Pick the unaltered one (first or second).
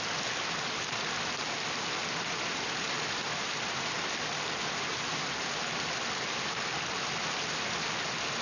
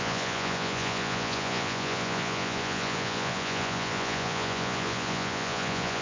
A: first